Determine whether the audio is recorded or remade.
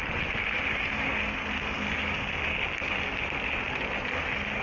recorded